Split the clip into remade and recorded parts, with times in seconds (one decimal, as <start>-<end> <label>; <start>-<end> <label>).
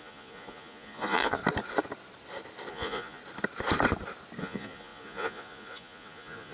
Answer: 0.0-1.4 remade; 1.4-2.7 recorded; 2.7-3.2 remade; 3.2-4.4 recorded; 4.4-6.5 remade